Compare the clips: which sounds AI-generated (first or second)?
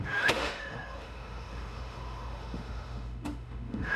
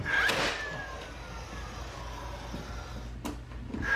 first